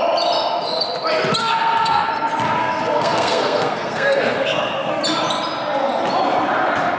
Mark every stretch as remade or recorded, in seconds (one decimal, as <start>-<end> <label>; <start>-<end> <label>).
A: 0.0-1.4 recorded; 1.4-2.1 remade; 2.1-2.6 recorded; 2.6-5.0 remade; 5.0-7.0 recorded